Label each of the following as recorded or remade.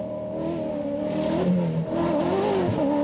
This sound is recorded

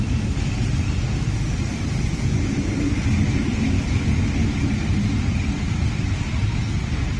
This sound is remade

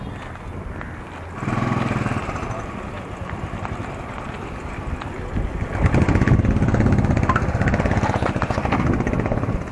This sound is recorded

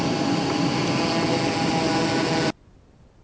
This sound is recorded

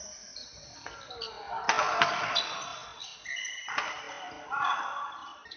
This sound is recorded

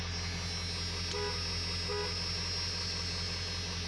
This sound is recorded